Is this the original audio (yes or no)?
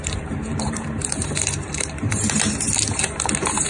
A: no